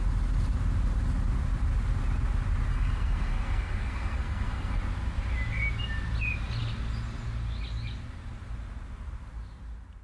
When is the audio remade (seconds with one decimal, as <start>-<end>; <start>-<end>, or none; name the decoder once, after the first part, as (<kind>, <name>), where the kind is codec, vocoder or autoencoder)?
2.7-4.8 (codec, SNAC)